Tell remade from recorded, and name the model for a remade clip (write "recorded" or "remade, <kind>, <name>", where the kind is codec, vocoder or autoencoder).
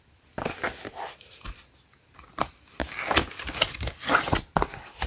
recorded